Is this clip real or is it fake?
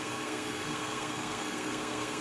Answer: fake